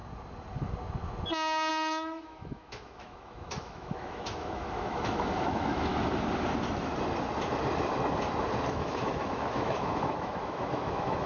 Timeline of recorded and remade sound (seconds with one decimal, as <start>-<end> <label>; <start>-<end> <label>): 0.0-1.7 recorded; 1.7-5.9 remade; 5.9-8.7 recorded; 8.7-11.3 remade